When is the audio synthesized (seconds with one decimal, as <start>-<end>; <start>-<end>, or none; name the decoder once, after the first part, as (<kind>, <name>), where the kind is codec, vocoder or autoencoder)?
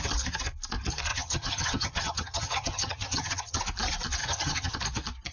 1.1-3.6 (vocoder, HiFi-GAN); 4.2-4.8